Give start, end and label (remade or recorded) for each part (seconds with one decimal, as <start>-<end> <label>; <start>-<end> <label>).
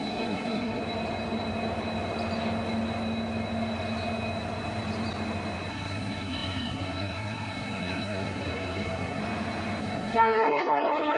0.0-0.8 remade; 0.8-5.7 recorded; 5.7-9.2 remade; 9.2-9.8 recorded; 9.8-11.2 remade